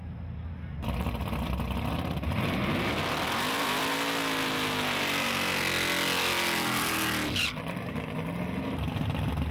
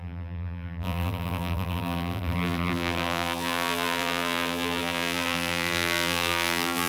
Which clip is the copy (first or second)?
second